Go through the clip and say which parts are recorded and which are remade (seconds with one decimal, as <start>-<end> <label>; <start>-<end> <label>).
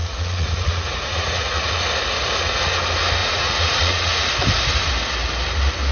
0.0-1.7 remade; 1.7-3.2 recorded; 3.2-4.1 remade; 4.1-5.9 recorded